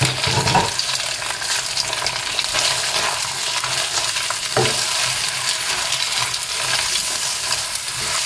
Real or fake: real